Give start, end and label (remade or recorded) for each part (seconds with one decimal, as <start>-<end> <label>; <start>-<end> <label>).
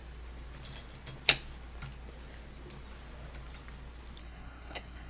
0.0-4.2 recorded; 4.2-5.1 remade